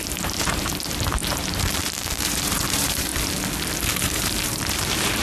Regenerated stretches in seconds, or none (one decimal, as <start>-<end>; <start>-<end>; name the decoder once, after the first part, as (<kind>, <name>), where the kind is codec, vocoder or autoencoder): 0.0-3.1 (vocoder, BigVGAN v2); 3.8-5.2